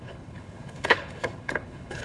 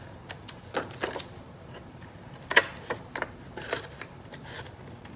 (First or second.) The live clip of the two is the second